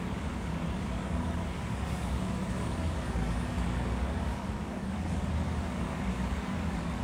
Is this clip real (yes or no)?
no